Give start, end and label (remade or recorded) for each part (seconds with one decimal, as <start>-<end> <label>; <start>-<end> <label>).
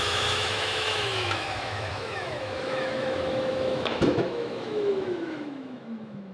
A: 0.0-6.3 remade